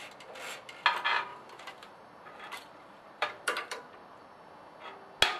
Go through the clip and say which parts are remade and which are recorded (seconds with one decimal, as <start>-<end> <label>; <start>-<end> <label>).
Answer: 0.0-1.3 recorded; 1.3-4.5 remade; 4.5-5.4 recorded